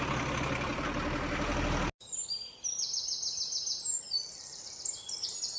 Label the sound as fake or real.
real